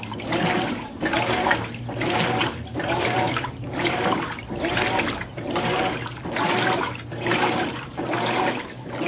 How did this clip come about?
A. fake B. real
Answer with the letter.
A